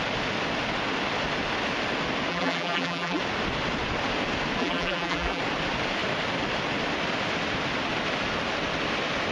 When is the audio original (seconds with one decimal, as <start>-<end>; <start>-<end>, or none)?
0.0-2.3; 3.2-4.6; 5.4-9.3